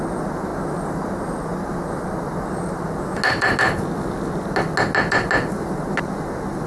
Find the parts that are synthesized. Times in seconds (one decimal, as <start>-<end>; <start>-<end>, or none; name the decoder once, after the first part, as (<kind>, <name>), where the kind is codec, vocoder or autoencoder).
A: none